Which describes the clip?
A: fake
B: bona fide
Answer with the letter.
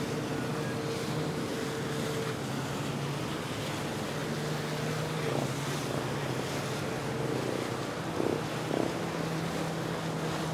B